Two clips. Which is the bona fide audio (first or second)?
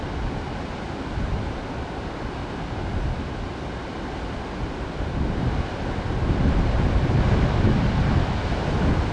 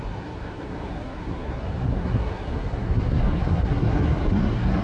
first